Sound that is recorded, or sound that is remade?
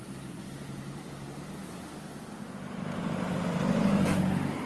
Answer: recorded